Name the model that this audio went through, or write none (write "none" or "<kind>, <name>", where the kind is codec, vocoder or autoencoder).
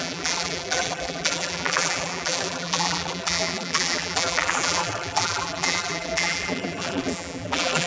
vocoder, BigVGAN v2